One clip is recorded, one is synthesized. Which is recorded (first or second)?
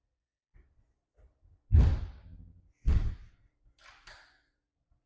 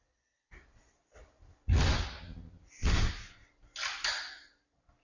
second